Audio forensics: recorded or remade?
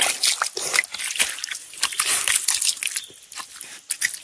recorded